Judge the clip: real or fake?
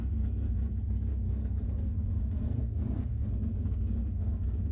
fake